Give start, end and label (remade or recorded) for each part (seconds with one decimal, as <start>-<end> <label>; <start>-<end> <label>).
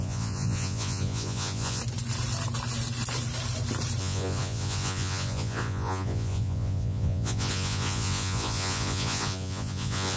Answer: 0.0-1.8 remade; 1.8-4.0 recorded; 4.0-10.2 remade